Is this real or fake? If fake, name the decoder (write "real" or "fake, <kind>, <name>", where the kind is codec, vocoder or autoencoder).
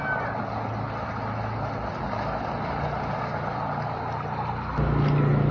real